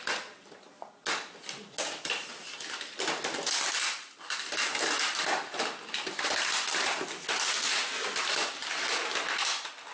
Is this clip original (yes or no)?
yes